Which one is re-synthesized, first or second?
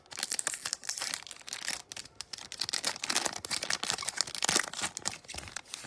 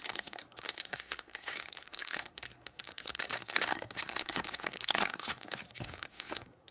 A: second